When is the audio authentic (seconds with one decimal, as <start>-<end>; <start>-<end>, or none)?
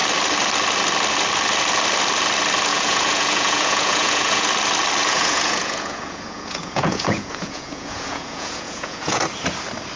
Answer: 0.0-2.7; 4.5-5.0; 9.2-10.0